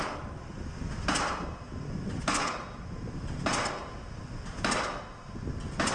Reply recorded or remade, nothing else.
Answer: recorded